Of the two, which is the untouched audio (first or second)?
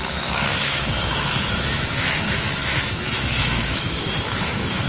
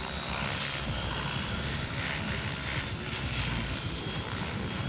second